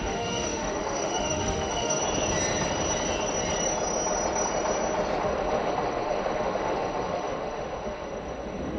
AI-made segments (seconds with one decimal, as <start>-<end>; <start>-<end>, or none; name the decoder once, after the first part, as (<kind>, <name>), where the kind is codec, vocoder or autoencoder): 0.0-2.0 (autoencoder, DAC-VAE); 5.2-8.8